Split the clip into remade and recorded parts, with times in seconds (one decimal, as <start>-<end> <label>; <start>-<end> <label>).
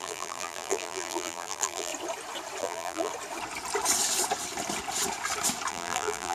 0.0-1.9 remade; 1.9-2.6 recorded; 2.6-3.1 remade; 3.1-5.7 recorded; 5.7-6.3 remade